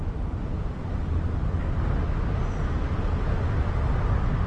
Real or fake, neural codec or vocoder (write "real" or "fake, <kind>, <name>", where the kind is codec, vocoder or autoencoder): real